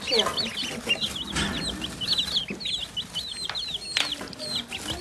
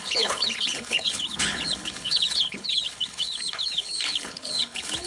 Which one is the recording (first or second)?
first